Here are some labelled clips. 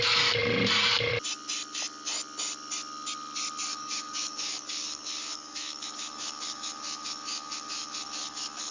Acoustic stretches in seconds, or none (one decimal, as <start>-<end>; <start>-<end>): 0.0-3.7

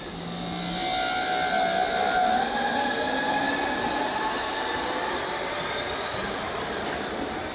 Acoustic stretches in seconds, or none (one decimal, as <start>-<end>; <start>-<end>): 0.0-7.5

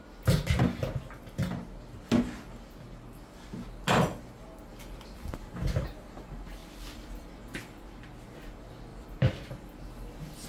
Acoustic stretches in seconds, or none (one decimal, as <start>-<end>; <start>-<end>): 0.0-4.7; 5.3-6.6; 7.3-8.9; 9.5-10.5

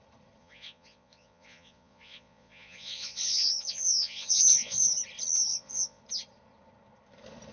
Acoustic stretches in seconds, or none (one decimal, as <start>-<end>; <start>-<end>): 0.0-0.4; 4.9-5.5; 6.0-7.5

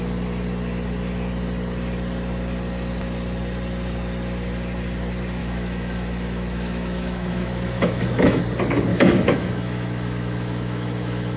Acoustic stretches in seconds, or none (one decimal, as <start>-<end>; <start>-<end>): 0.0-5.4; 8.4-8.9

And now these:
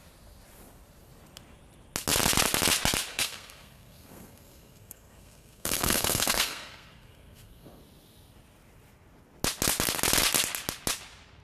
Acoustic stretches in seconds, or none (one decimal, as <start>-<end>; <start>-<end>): 0.0-3.1; 7.8-11.4

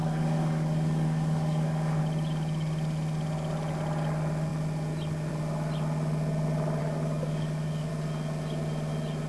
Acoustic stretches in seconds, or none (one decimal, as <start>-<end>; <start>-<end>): 2.0-6.8; 7.9-9.3

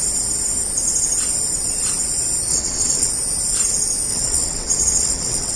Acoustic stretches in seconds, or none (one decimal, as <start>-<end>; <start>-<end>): 0.0-2.5; 3.1-4.1